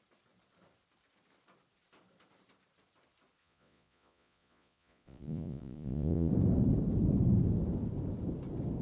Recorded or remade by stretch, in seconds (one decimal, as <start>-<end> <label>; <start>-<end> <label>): 0.0-3.4 recorded; 3.4-6.3 remade; 6.3-8.8 recorded